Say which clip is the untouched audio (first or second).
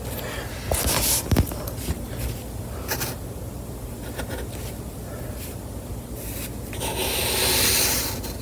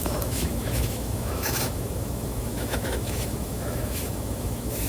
first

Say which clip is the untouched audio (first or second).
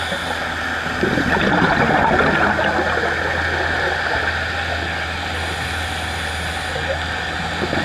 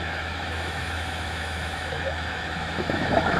first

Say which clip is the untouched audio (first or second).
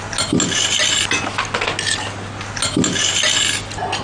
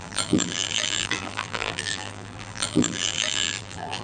first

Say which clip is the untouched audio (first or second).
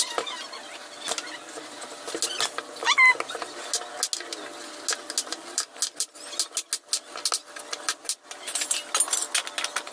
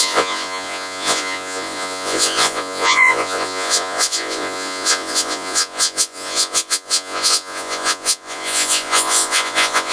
first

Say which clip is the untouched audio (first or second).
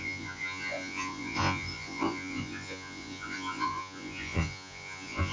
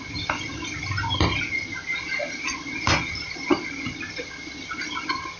second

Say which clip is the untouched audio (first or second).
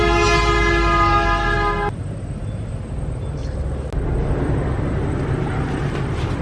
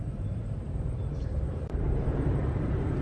first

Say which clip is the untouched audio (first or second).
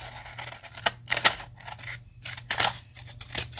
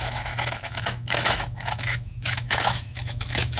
first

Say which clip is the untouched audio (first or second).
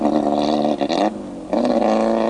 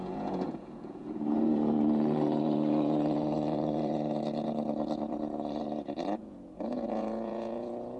first